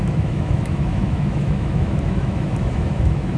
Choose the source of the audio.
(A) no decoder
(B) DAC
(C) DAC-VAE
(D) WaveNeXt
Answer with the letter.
C